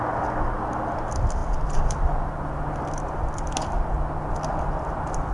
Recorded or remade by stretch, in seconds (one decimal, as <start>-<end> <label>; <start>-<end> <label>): 0.0-5.3 recorded